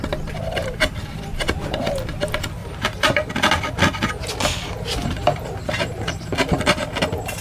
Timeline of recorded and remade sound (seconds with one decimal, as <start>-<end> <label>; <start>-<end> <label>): 0.0-0.6 recorded; 0.6-2.0 remade; 2.0-2.6 recorded; 2.6-3.3 remade; 3.3-5.0 recorded; 5.0-6.3 remade; 6.3-7.4 recorded